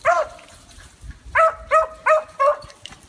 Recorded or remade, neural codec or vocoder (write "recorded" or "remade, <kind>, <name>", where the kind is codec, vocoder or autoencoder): recorded